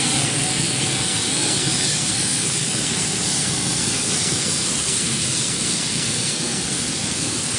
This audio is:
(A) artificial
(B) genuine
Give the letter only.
A